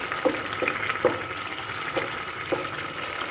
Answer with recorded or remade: remade